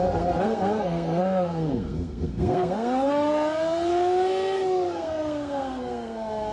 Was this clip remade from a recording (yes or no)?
yes